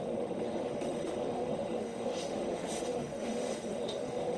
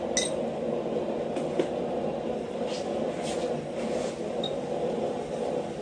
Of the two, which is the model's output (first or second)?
first